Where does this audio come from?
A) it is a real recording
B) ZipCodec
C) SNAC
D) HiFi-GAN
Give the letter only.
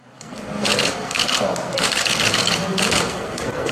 C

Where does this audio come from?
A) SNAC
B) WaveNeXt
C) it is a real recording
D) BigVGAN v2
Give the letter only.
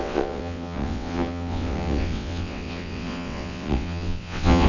B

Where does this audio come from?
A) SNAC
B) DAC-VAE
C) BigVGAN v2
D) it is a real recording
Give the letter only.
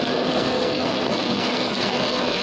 A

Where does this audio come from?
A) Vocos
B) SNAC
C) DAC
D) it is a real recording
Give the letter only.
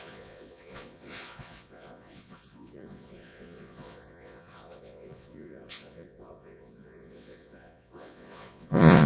A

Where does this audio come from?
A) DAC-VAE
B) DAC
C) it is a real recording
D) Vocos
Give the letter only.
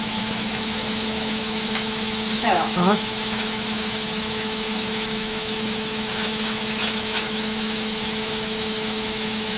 A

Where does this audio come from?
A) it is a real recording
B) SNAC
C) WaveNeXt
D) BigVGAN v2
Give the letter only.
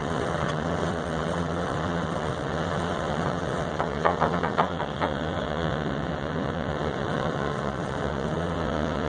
C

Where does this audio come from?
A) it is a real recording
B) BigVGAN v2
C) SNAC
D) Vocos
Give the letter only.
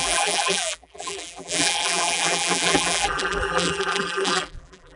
B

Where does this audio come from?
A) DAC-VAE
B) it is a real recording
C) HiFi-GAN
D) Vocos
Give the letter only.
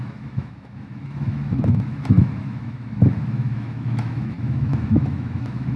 A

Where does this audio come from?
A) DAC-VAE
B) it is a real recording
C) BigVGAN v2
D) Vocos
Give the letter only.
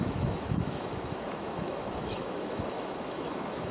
A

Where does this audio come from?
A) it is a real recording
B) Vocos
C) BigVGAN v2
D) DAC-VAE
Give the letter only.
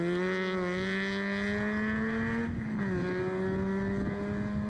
A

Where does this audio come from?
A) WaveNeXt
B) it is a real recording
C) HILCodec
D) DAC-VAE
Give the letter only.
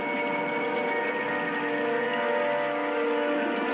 B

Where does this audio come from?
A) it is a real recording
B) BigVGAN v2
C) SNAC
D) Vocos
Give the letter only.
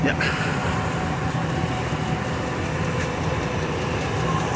A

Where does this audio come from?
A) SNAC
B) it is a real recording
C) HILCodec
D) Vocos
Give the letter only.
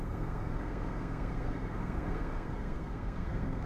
A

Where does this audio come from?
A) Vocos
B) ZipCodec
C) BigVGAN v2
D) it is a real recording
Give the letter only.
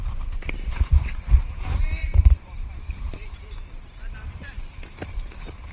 C